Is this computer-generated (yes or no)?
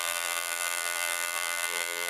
yes